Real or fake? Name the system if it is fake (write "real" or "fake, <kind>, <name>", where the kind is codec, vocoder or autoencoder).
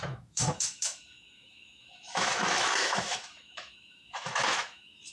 fake, autoencoder, DAC-VAE